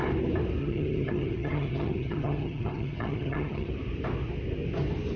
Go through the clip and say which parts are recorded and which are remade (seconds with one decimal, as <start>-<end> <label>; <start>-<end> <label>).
0.0-0.6 recorded; 0.6-3.7 remade; 3.7-5.2 recorded